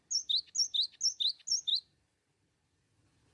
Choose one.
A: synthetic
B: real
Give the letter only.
B